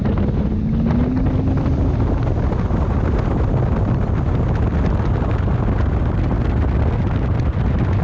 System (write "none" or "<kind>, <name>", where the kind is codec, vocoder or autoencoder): none